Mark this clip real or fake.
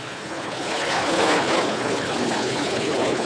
fake